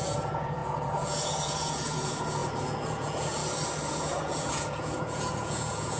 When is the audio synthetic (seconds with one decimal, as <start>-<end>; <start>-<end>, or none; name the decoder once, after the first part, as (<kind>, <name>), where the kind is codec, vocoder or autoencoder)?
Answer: 0.0-3.4 (vocoder, Vocos); 3.9-6.0